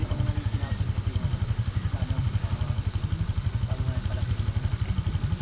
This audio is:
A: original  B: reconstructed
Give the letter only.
A